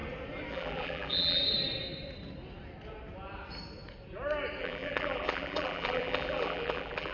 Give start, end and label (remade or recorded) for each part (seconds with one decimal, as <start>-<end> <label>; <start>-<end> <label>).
0.0-0.5 recorded; 0.5-1.4 remade; 1.4-4.6 recorded; 4.6-7.1 remade

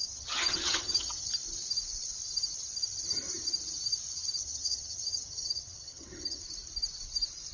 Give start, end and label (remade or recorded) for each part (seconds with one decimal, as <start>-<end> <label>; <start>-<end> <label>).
0.0-1.3 remade; 1.3-4.4 recorded; 4.4-6.4 remade; 6.4-7.5 recorded

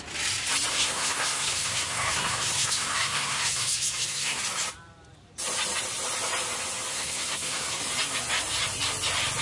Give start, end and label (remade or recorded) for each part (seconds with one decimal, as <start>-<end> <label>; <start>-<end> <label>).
0.0-0.7 recorded; 0.7-4.4 remade; 4.4-6.9 recorded; 6.9-7.8 remade; 7.8-9.4 recorded

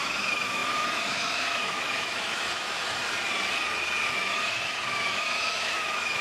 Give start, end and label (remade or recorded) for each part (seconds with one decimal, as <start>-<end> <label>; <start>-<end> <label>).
0.0-3.0 remade; 3.0-4.1 recorded; 4.1-6.2 remade

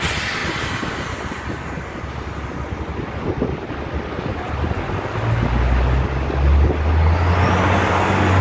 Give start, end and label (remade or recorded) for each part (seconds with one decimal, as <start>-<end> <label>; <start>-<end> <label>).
0.0-8.4 recorded